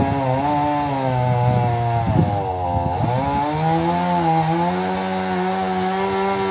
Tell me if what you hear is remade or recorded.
recorded